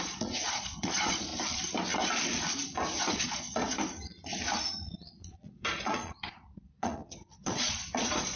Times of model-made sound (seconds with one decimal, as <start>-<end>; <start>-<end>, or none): 0.0-1.3; 3.0-3.6; 5.1-8.4